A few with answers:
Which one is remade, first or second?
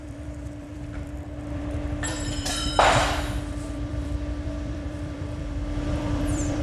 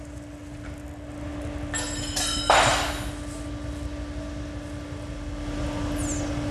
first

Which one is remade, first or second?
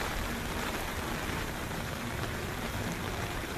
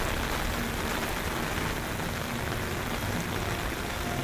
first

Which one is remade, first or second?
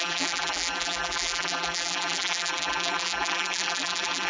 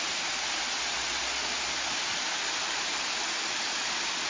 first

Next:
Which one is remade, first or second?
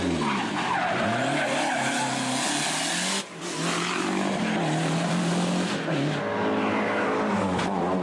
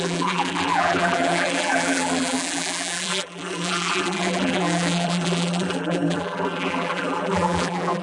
second